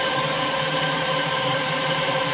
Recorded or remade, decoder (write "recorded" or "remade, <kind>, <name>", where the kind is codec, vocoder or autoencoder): remade, vocoder, BigVGAN v2